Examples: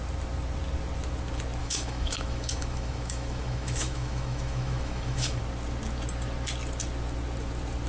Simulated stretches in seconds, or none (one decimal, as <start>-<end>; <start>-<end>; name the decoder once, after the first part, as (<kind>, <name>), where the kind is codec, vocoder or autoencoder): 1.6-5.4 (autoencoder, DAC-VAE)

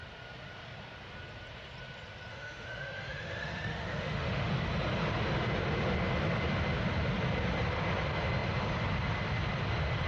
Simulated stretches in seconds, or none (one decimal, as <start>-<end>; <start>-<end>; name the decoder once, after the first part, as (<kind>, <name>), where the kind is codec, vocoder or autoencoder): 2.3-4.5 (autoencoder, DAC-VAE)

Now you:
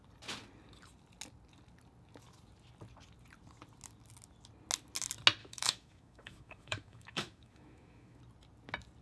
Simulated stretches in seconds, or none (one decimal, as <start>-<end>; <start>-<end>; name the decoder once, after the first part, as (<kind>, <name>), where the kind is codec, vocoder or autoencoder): 5.4-8.2 (autoencoder, DAC-VAE)

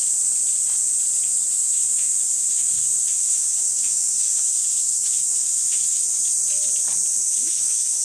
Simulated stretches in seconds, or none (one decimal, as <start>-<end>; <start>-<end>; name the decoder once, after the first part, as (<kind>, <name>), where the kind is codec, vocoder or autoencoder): 1.5-6.2 (autoencoder, DAC-VAE); 7.1-8.0

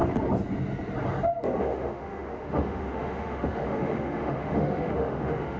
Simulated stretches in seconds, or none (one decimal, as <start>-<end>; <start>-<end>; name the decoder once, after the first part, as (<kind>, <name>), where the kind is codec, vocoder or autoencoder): 1.6-5.6 (autoencoder, DAC-VAE)